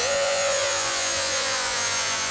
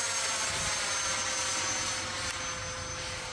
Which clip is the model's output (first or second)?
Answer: first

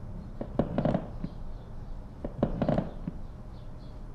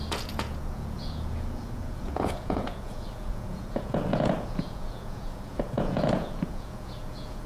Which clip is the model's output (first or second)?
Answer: second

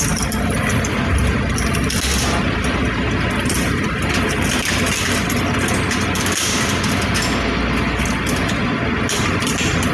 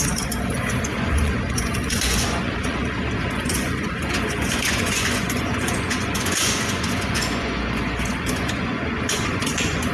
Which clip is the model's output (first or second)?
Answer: second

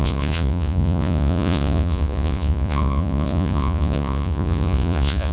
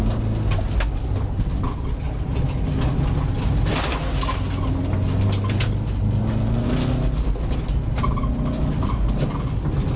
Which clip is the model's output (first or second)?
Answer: first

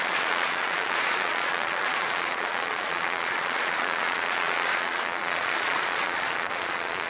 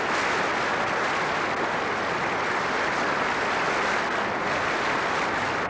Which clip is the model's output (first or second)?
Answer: first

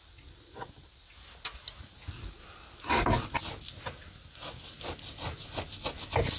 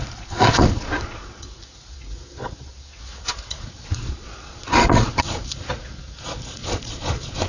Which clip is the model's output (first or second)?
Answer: second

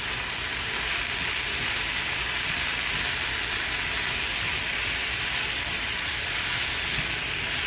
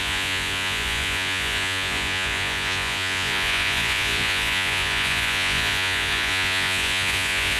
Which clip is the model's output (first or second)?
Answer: second